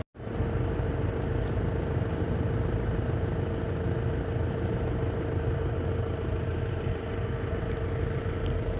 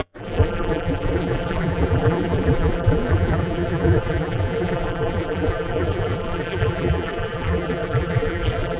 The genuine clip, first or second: first